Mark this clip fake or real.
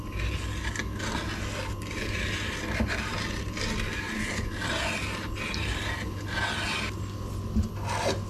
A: real